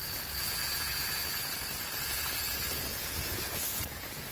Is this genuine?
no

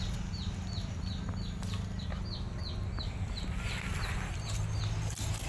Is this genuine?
yes